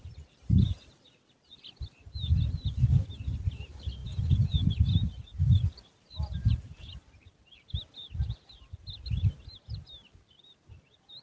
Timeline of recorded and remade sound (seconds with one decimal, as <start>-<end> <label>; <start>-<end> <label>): 0.0-11.2 recorded